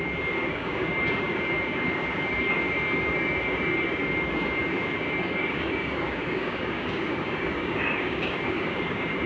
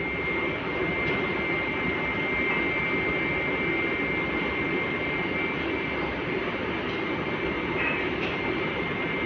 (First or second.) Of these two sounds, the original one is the second